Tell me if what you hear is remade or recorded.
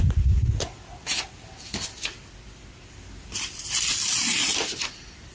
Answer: recorded